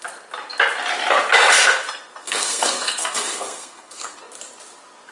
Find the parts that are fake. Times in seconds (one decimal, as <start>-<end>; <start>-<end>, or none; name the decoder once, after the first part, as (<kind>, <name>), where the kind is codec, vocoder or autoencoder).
2.2-4.2 (codec, SNAC)